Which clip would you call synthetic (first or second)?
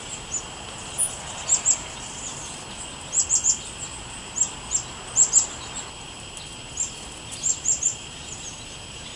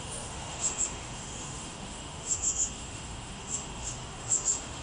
second